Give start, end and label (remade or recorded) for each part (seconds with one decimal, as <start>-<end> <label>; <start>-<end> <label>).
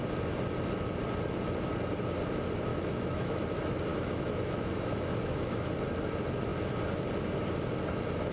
0.0-2.7 recorded; 2.7-3.4 remade; 3.4-3.9 recorded; 3.9-5.7 remade; 5.7-8.3 recorded